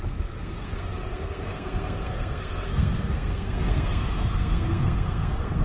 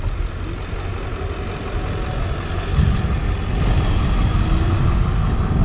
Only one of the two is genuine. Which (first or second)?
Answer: second